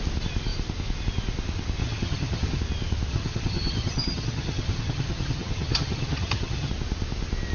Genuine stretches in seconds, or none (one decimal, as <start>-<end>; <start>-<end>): 0.0-1.8; 2.6-3.1; 6.7-7.5